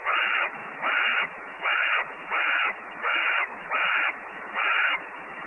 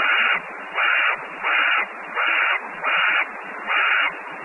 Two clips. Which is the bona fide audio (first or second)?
second